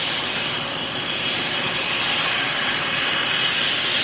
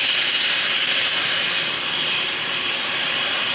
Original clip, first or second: first